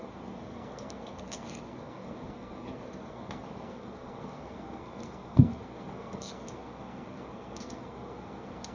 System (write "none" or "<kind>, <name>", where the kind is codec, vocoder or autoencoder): codec, SNAC